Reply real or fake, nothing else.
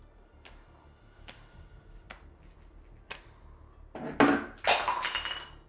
real